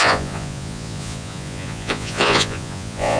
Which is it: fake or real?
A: fake